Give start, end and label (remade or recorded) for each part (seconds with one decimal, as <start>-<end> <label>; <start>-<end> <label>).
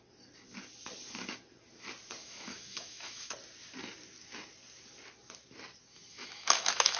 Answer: 0.0-2.2 recorded; 2.2-3.3 remade; 3.3-6.1 recorded; 6.1-7.0 remade